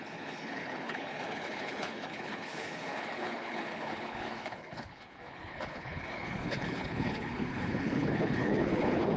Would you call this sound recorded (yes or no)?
no